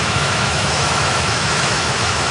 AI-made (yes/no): yes